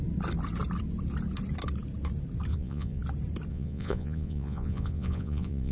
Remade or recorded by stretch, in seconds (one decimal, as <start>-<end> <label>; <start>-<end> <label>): 0.0-2.5 recorded; 2.5-3.0 remade; 3.0-3.5 recorded; 3.5-5.7 remade